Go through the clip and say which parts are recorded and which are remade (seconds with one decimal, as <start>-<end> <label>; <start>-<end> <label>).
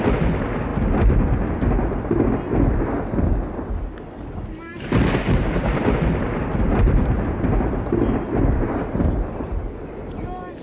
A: 0.0-4.7 recorded; 4.7-5.8 remade; 5.8-6.5 recorded; 6.5-9.9 remade; 9.9-10.6 recorded